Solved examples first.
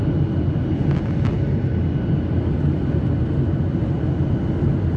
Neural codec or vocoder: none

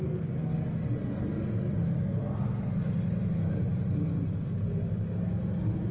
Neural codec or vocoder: none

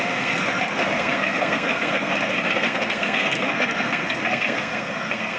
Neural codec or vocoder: codec, SNAC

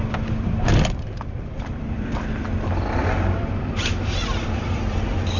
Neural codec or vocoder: vocoder, BigVGAN v2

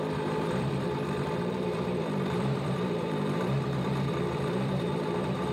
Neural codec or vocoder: vocoder, BigVGAN v2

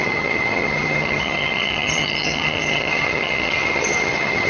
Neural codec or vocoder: vocoder, HiFi-GAN